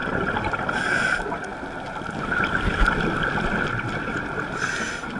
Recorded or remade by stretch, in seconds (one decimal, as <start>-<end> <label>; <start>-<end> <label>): 0.0-5.2 recorded